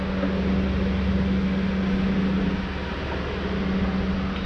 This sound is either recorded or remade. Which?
recorded